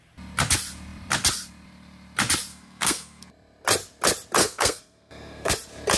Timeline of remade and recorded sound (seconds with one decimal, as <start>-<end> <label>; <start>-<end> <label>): 0.0-2.5 recorded; 2.5-3.3 remade; 3.3-4.4 recorded; 4.4-5.5 remade; 5.5-6.0 recorded